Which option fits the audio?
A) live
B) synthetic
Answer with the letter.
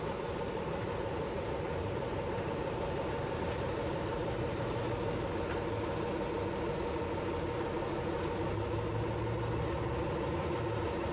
A